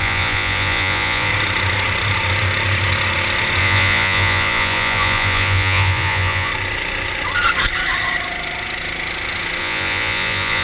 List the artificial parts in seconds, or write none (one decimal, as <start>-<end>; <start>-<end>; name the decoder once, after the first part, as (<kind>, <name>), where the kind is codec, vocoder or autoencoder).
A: 0.0-1.3 (vocoder, Vocos); 3.6-6.5; 9.6-10.6